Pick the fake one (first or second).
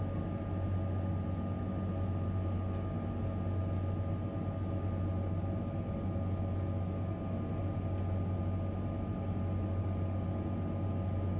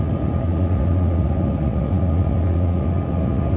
second